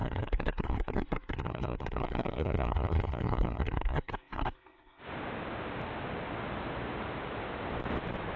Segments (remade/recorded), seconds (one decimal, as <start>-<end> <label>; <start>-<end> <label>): 0.0-5.0 remade; 5.0-8.4 recorded